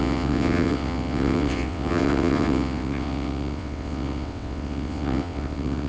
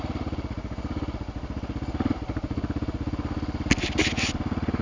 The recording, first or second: second